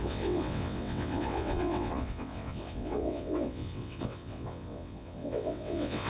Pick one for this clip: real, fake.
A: fake